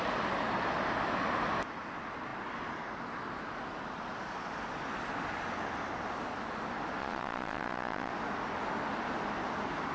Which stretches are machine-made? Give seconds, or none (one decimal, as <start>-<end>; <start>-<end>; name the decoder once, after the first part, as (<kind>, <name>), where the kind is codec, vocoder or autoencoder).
7.0-8.1 (vocoder, Vocos)